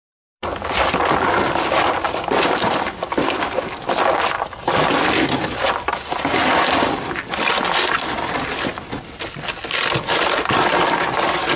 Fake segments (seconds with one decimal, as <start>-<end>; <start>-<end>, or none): none